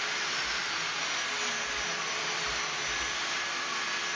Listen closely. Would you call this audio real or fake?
real